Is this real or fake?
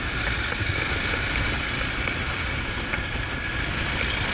real